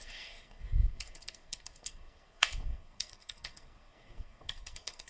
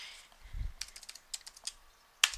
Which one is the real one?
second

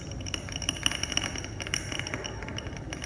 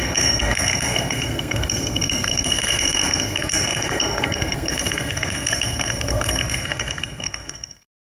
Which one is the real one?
first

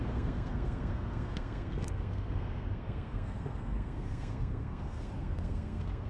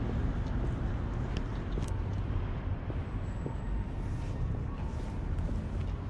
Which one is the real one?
second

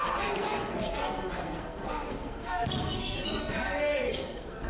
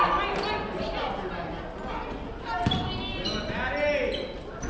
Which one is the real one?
second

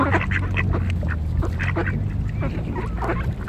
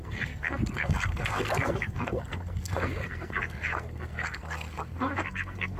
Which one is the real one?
first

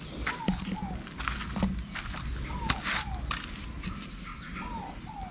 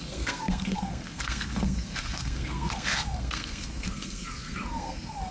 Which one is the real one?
first